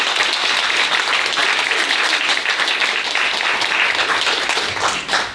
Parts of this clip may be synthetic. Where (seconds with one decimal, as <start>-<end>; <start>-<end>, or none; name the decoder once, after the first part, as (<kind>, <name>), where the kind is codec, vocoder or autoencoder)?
none